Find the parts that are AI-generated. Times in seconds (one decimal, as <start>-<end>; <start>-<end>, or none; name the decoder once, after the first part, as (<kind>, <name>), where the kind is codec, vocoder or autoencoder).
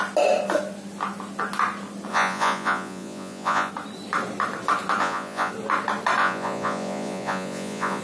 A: 2.1-3.7 (vocoder, Vocos); 5.0-5.5; 6.2-8.0